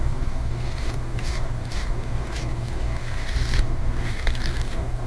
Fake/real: fake